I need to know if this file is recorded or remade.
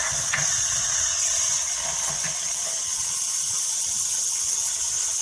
remade